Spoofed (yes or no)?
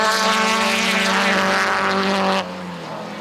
no